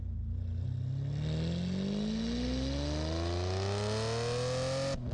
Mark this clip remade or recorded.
recorded